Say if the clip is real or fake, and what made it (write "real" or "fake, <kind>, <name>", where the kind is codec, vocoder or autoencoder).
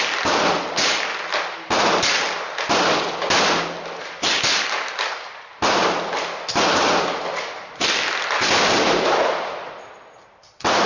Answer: real